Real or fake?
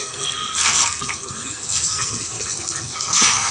fake